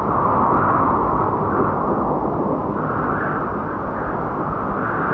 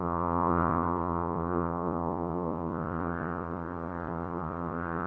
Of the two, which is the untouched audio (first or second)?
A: first